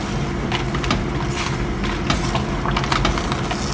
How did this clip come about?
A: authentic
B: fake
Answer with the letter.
A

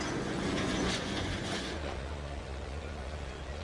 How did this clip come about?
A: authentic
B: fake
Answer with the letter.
B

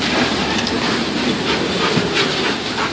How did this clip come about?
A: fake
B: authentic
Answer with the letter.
B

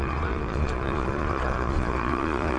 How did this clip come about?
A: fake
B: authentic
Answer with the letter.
A